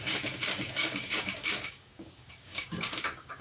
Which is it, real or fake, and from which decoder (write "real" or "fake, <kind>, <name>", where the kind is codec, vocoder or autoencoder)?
fake, codec, DAC